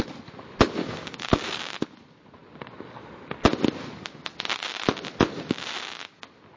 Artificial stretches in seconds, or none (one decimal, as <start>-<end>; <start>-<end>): 0.8-1.5